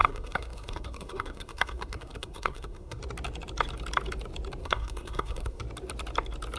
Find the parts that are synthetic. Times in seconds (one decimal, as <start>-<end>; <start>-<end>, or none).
0.0-3.0; 4.6-5.6